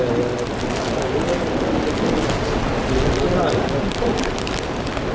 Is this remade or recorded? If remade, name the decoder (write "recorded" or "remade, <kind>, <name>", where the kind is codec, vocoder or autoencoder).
recorded